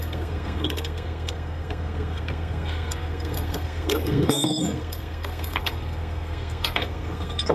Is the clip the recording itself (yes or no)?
no